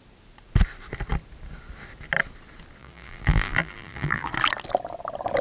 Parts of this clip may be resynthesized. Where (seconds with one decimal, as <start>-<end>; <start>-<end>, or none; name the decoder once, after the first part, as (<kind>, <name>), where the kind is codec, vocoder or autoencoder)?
2.8-4.3 (vocoder, BigVGAN v2)

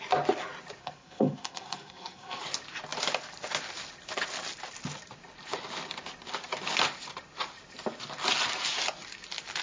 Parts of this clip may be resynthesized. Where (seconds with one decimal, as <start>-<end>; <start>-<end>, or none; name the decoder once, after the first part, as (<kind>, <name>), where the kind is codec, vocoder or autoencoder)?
0.8-2.4 (codec, SNAC)

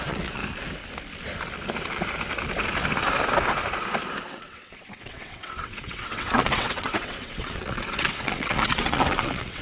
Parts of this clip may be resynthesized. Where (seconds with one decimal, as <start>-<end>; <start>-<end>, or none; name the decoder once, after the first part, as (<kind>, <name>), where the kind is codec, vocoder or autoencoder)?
0.0-0.4 (vocoder, WaveNeXt); 4.2-9.6

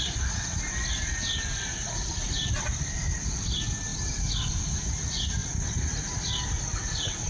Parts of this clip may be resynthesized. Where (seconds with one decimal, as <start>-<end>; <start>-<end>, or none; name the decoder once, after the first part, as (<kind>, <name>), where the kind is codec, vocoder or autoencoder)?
none

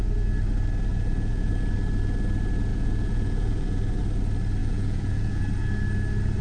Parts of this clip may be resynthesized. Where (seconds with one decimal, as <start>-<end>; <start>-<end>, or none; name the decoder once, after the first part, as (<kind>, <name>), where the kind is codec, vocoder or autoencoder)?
0.9-1.5 (vocoder, Vocos); 2.7-4.0; 4.6-5.4

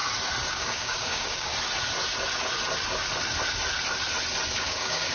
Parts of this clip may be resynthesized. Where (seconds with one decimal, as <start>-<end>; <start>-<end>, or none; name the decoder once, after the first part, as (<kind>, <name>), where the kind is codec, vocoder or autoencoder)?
0.5-1.5 (codec, DAC); 4.6-5.1

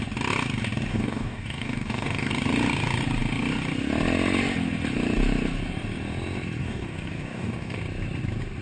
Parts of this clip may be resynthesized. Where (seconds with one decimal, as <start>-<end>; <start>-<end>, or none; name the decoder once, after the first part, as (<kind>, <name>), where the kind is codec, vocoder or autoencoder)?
0.9-2.3 (codec, DAC); 6.6-7.8

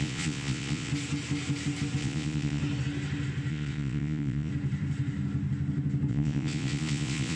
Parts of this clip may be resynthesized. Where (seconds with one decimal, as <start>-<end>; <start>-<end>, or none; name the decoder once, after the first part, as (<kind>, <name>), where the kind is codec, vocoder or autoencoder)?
0.0-0.9 (vocoder, Vocos); 2.0-2.6; 3.5-4.5; 6.1-7.4